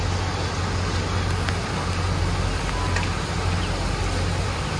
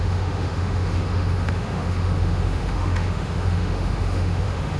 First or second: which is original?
first